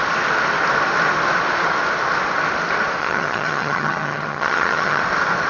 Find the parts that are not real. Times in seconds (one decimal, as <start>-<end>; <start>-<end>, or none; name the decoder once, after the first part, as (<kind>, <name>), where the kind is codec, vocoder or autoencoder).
3.0-5.0 (vocoder, HiFi-GAN)